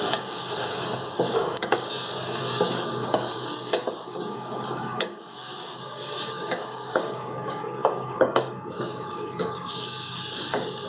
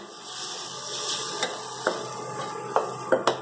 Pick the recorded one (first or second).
second